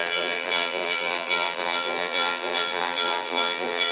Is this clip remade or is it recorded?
remade